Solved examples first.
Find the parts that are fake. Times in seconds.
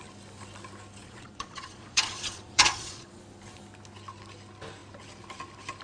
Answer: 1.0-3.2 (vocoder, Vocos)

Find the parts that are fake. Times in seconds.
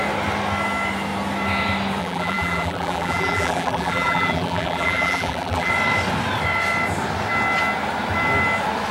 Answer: 2.0-5.7 (vocoder, BigVGAN v2)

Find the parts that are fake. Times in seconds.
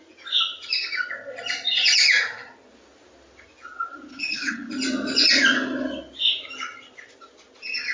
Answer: 4.1-4.7 (codec, HILCodec)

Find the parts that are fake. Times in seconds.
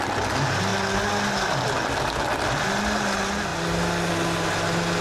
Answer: none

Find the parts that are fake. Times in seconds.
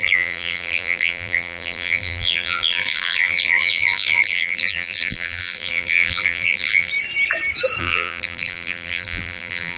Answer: 0.0-6.9 (vocoder, BigVGAN v2); 7.8-9.8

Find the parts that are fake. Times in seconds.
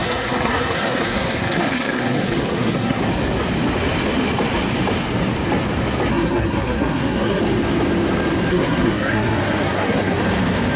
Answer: 0.0-3.0 (codec, SNAC); 6.1-7.4; 8.5-10.2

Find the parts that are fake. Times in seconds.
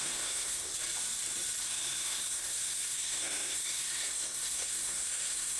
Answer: 0.0-0.7 (codec, SNAC); 1.6-5.6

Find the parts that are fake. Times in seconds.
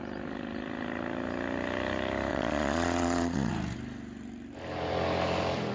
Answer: 2.3-3.5 (vocoder, Vocos)